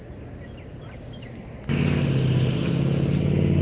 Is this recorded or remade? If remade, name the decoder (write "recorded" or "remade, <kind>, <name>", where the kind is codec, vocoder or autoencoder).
recorded